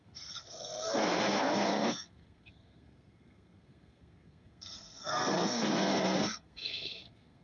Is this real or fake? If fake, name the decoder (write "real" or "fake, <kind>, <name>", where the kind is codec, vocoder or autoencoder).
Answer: fake, codec, SNAC